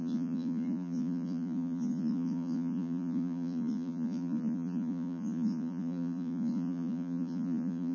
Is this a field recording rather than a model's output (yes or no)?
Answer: no